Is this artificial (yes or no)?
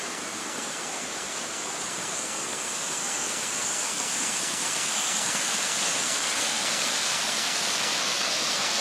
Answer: yes